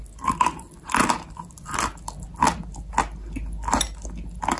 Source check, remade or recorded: recorded